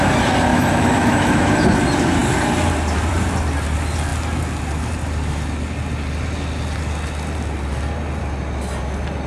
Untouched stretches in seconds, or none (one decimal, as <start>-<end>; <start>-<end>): 0.0-0.5; 1.5-9.3